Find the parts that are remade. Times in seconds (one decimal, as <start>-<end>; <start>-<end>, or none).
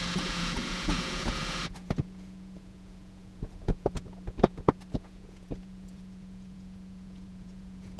0.0-8.0